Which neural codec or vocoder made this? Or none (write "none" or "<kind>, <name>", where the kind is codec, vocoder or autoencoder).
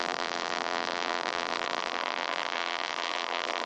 vocoder, BigVGAN v2